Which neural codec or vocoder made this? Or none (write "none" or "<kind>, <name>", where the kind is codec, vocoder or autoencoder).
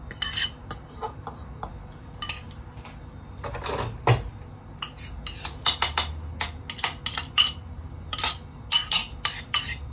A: none